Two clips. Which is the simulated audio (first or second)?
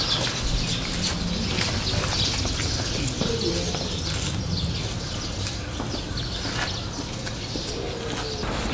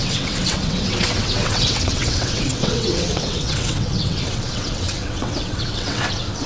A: second